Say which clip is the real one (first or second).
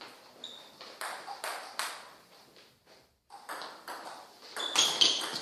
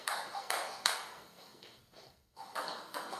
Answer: first